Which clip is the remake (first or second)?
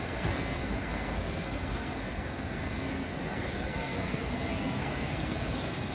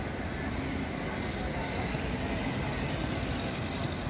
first